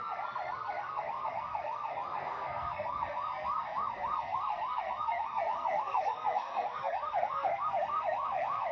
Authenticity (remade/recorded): remade